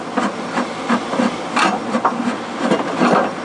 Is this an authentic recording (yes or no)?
yes